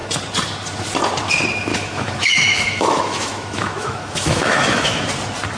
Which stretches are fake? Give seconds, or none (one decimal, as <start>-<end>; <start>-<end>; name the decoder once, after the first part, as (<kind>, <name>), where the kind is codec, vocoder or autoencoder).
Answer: 1.7-5.1 (autoencoder, DAC-VAE)